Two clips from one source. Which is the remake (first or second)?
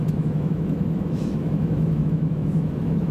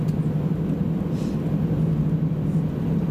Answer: first